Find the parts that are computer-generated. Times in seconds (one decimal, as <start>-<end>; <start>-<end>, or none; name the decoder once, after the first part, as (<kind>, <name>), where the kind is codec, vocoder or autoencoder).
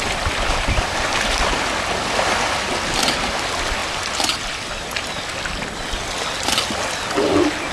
none